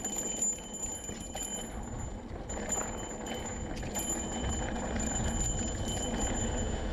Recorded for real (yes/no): yes